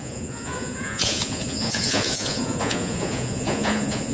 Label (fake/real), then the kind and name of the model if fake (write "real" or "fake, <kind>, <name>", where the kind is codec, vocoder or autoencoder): fake, vocoder, Vocos